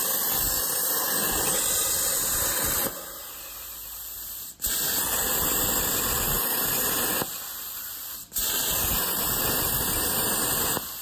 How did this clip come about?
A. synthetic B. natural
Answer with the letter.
B